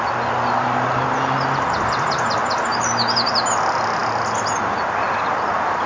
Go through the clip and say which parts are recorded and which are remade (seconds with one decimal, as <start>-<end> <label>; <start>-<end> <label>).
0.0-5.9 recorded